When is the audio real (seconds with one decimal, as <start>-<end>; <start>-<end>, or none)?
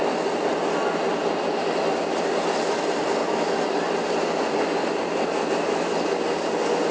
0.0-6.9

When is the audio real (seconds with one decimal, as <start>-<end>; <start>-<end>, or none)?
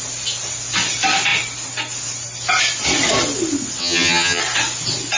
0.0-3.8; 4.4-5.2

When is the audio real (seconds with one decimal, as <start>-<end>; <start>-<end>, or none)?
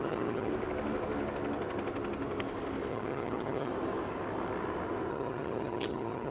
0.5-2.9; 3.7-5.1